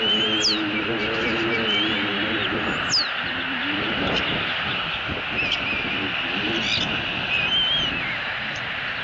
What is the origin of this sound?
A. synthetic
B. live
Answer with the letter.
B